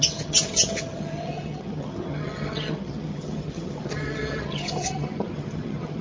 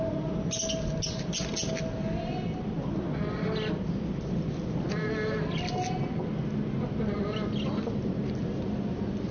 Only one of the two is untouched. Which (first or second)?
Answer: second